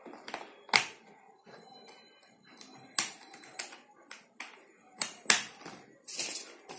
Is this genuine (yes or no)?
yes